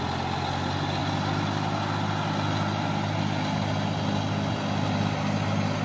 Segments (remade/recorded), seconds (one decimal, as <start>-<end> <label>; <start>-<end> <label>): 0.0-5.8 recorded